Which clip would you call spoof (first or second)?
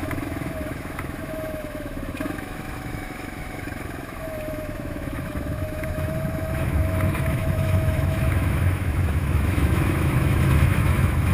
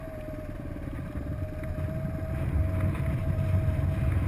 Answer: first